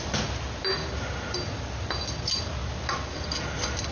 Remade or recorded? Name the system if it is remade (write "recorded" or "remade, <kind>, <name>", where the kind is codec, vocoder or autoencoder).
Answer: recorded